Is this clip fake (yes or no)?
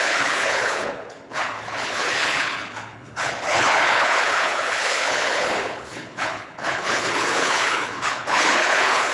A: yes